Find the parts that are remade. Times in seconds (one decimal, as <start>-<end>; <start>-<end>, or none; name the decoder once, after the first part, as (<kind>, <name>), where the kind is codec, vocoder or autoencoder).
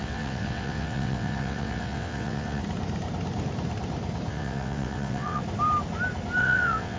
0.0-2.6 (vocoder, WaveNeXt); 4.3-5.4; 6.4-7.0